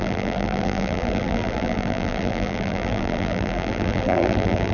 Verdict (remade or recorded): remade